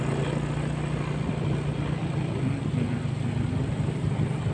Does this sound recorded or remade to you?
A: recorded